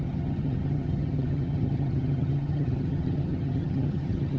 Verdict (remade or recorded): remade